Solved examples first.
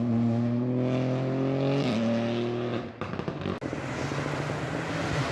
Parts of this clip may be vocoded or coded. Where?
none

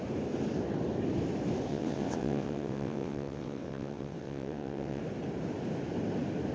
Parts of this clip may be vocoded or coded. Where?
1.7-5.0 (vocoder, WaveNeXt)

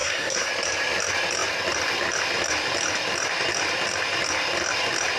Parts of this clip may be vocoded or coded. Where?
0.0-0.5 (codec, SNAC)

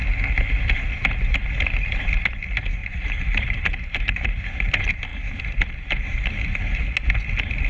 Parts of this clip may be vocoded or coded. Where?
2.8-4.4 (vocoder, BigVGAN v2)

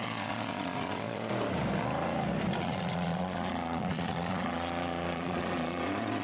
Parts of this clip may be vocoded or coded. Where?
0.0-1.3 (vocoder, Vocos); 2.6-6.2

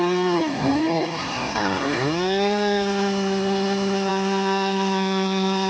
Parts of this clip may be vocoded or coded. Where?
0.0-5.7 (codec, SNAC)

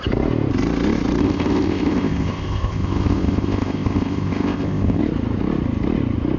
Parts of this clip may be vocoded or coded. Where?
1.2-5.0 (codec, ZipCodec)

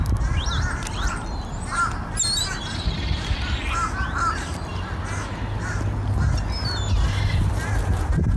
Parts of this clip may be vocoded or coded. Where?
none